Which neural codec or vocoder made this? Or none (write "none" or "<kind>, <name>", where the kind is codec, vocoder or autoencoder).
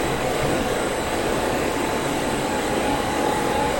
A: codec, DAC